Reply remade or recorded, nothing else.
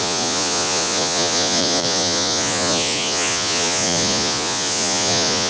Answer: remade